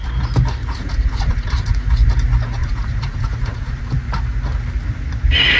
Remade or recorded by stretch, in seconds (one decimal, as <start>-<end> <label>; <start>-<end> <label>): 0.0-0.6 recorded; 0.6-1.9 remade; 1.9-2.6 recorded; 2.6-3.8 remade; 3.8-5.6 recorded